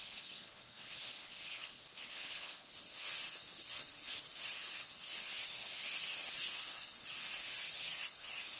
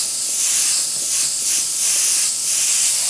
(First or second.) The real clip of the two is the second